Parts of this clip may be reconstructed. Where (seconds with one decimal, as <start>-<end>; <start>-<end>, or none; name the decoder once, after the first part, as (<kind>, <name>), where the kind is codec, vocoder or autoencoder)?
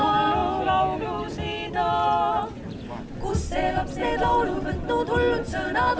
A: none